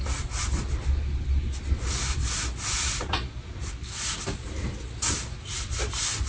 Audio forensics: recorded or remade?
recorded